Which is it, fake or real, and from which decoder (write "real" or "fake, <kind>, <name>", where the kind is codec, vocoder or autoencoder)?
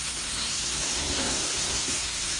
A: fake, codec, SNAC